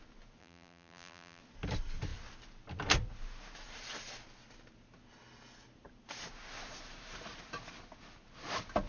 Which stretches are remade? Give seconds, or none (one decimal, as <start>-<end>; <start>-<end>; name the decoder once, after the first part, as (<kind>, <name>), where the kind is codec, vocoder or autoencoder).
0.4-1.4 (vocoder, BigVGAN v2)